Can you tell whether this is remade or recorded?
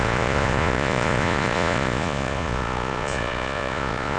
remade